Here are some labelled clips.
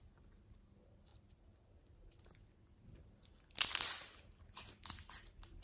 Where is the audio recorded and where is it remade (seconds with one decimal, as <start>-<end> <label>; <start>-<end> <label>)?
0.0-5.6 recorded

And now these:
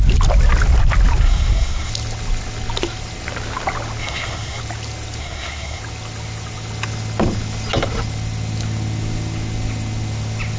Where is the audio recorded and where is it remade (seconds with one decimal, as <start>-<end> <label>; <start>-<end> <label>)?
0.0-1.2 recorded; 1.2-1.9 remade; 1.9-4.0 recorded; 4.0-4.6 remade; 4.6-5.2 recorded; 5.2-5.8 remade; 5.8-10.6 recorded

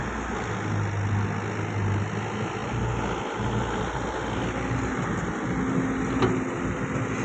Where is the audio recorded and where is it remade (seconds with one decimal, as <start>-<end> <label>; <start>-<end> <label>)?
0.0-7.2 recorded

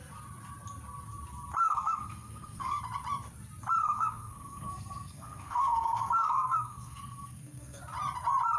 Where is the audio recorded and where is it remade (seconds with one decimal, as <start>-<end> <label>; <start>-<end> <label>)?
0.0-1.6 recorded; 1.6-2.8 remade; 2.8-3.8 recorded; 3.8-7.8 remade; 7.8-8.6 recorded